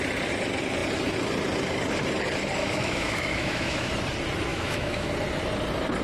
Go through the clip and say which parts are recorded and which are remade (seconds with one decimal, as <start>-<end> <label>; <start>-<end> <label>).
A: 0.0-2.6 recorded; 2.6-3.9 remade; 3.9-4.5 recorded; 4.5-5.1 remade; 5.1-6.0 recorded